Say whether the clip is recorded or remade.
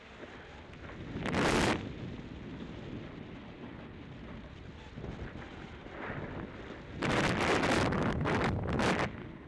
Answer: recorded